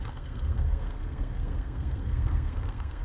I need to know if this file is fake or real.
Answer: fake